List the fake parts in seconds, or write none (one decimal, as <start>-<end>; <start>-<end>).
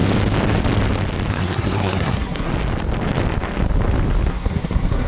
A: 1.3-2.5; 4.3-5.1